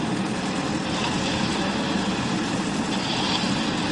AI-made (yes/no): no